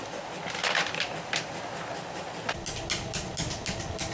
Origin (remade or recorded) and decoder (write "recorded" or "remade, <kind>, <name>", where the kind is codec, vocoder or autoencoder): recorded